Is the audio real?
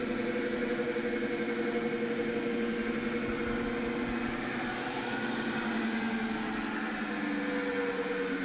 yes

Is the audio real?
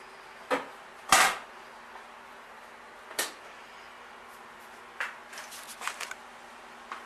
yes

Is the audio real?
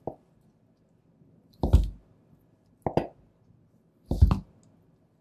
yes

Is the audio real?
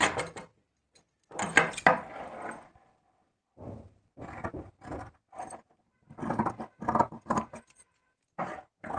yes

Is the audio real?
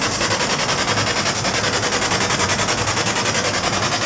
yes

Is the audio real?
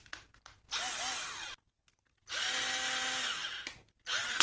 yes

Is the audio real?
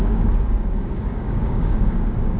no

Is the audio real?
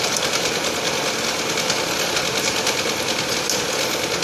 yes